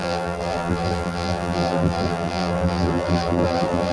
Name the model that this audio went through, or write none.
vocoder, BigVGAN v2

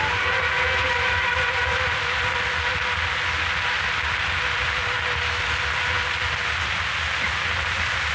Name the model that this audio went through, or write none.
none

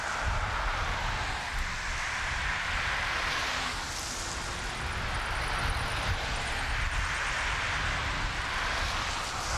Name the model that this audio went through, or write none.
none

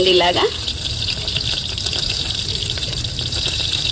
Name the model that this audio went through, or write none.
vocoder, BigVGAN v2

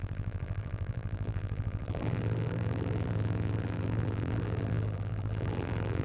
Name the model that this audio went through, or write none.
vocoder, BigVGAN v2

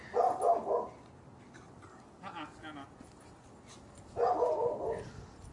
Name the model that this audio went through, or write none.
none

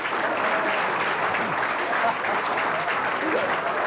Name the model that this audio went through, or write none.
none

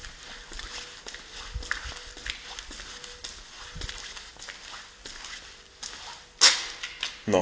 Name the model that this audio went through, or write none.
none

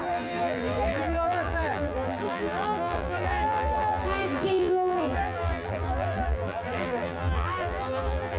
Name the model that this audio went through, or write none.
vocoder, BigVGAN v2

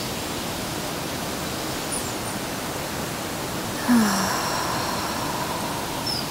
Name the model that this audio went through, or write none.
none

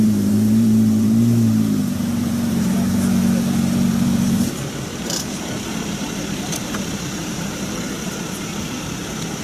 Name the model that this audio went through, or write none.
vocoder, BigVGAN v2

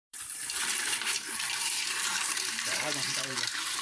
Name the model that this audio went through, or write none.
vocoder, BigVGAN v2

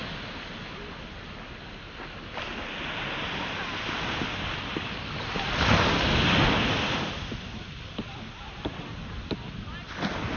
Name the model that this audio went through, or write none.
none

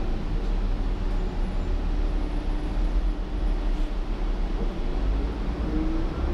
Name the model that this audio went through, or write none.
none